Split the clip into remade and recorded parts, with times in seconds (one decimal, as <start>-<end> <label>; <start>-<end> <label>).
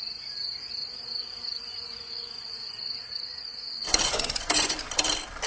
0.0-1.7 recorded; 1.7-4.8 remade; 4.8-5.5 recorded